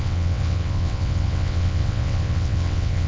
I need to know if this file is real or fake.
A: fake